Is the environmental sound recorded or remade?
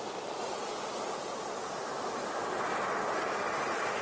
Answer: recorded